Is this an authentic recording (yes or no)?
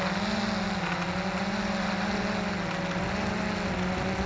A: yes